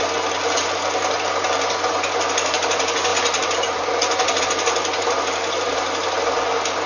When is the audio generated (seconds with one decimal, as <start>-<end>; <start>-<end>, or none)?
none